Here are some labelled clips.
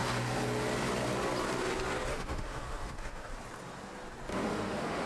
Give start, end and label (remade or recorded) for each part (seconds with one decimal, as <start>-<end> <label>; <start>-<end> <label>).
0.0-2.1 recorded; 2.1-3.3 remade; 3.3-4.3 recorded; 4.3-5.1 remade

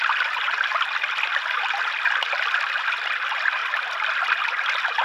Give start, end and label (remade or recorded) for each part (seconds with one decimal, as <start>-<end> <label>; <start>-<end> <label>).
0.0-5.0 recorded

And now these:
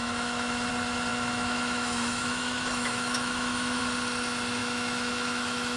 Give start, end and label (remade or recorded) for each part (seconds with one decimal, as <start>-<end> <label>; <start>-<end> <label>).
0.0-0.7 remade; 0.7-1.1 recorded; 1.1-3.8 remade; 3.8-4.6 recorded; 4.6-5.8 remade